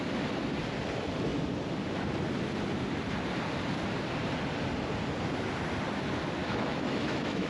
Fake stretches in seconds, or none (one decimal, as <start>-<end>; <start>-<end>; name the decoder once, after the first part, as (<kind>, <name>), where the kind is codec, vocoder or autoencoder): 6.4-7.5 (autoencoder, DAC-VAE)